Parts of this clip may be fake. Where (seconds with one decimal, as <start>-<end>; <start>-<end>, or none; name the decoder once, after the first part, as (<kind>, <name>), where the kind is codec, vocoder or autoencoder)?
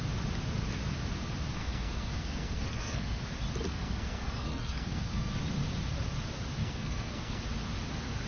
1.6-3.2 (codec, SNAC); 3.7-5.3; 6.6-7.4